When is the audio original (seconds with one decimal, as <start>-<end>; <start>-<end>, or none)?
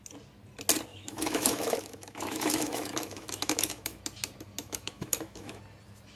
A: 0.0-0.9; 4.0-4.6; 5.6-6.2